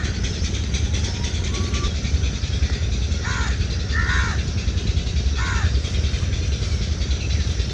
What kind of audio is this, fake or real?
real